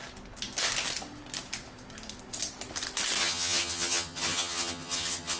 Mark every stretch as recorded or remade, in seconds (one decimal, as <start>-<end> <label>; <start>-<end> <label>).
0.0-3.2 recorded; 3.2-5.4 remade